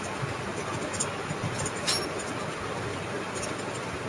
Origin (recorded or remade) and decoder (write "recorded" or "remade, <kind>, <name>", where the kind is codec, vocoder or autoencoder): recorded